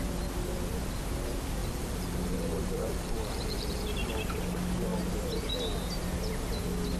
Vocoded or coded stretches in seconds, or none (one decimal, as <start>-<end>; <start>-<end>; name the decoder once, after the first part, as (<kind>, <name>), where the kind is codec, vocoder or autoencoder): 1.6-4.1 (vocoder, BigVGAN v2)